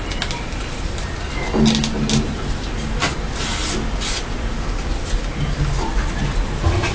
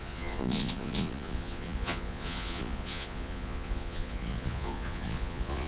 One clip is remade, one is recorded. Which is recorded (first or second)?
first